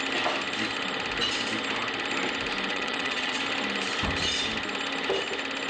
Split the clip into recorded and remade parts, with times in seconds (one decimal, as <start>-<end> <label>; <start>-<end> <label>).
0.0-2.7 recorded; 2.7-3.4 remade; 3.4-5.7 recorded